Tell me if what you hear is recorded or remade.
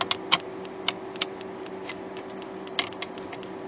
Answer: recorded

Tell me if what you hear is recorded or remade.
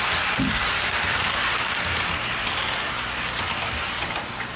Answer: recorded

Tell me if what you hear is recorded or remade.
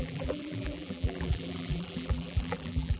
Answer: remade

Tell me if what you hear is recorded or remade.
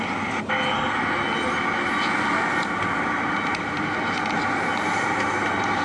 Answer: recorded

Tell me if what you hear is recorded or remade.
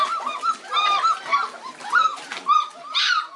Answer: remade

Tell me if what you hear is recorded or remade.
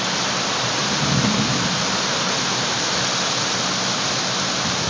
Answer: recorded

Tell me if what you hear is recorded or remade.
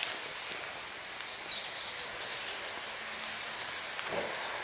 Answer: recorded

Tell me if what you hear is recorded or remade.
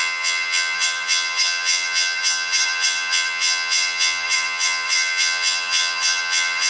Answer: remade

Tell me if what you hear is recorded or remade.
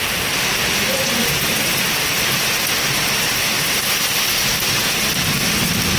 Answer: remade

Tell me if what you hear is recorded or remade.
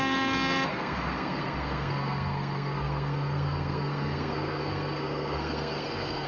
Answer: remade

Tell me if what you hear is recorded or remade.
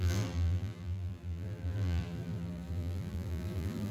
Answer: remade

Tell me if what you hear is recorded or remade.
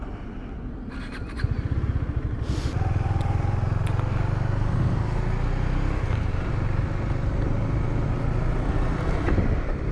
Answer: recorded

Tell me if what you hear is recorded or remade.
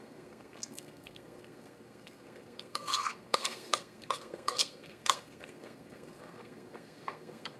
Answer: remade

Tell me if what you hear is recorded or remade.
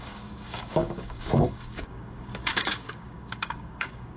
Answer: remade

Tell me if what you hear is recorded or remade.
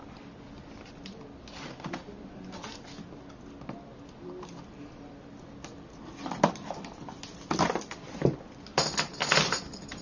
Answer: recorded